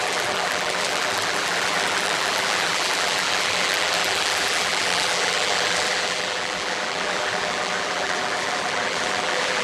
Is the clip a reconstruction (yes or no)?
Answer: yes